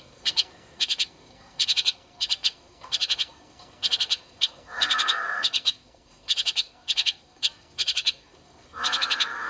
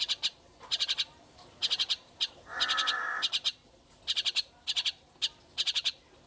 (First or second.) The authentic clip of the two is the second